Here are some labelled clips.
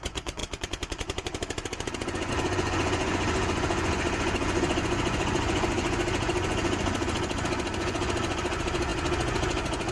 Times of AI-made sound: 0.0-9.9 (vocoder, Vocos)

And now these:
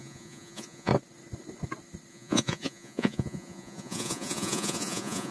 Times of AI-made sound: 0.0-0.9 (vocoder, Vocos); 2.1-5.3

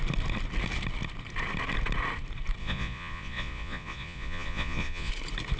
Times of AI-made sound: 2.6-5.1 (vocoder, Vocos)